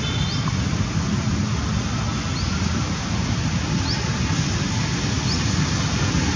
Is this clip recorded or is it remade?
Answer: recorded